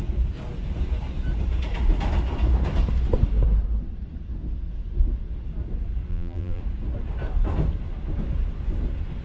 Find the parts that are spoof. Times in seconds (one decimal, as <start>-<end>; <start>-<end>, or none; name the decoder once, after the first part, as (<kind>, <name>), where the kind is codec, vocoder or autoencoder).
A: 6.1-6.6 (vocoder, BigVGAN v2)